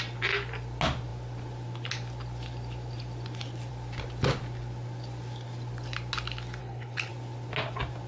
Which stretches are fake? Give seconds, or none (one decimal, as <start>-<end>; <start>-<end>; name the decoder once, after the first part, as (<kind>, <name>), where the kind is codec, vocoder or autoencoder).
6.6-7.1 (codec, HILCodec)